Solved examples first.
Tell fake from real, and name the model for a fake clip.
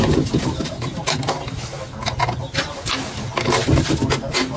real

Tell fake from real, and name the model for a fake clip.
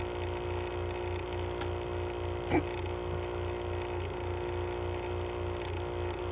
real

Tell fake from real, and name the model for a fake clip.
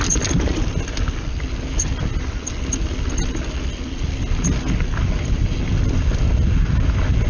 real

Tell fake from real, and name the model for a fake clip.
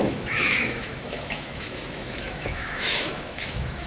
fake, autoencoder, DAC-VAE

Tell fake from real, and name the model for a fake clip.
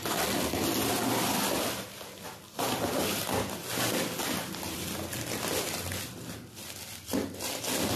real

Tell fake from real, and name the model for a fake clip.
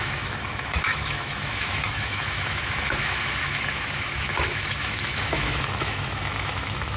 fake, autoencoder, DAC-VAE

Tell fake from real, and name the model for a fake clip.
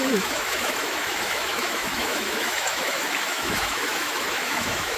fake, autoencoder, DAC-VAE